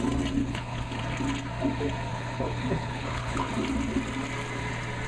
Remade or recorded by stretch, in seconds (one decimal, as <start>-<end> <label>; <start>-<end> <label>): 0.0-0.4 recorded; 0.4-1.0 remade; 1.0-2.1 recorded; 2.1-3.5 remade; 3.5-5.1 recorded